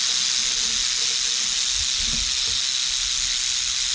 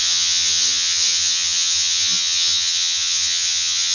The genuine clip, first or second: first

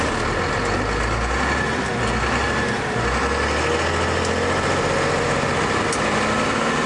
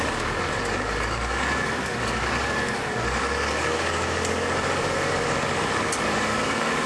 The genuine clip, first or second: first